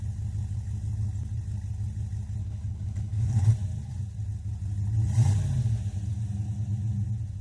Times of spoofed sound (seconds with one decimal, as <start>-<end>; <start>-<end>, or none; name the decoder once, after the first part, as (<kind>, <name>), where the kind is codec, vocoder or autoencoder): 2.4-3.5 (codec, HILCodec)